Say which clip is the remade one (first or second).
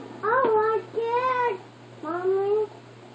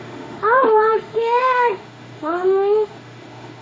second